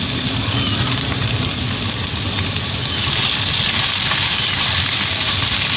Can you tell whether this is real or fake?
real